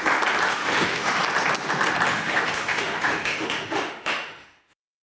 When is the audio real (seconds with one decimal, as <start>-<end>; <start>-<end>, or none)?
0.0-0.5; 1.2-2.1